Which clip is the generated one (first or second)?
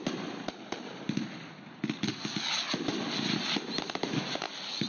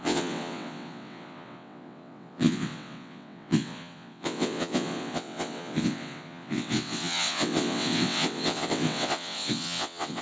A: second